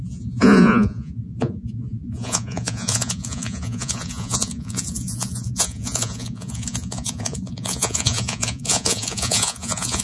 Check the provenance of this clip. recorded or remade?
remade